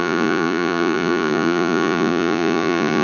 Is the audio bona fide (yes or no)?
no